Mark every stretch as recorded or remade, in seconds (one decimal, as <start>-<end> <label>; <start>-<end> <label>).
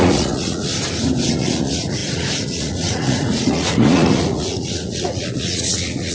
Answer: 0.0-0.7 remade; 0.7-1.3 recorded; 1.3-6.1 remade